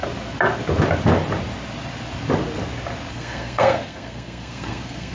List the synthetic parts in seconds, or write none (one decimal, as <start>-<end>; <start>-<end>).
3.1-5.1